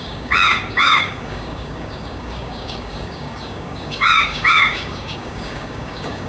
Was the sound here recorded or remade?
remade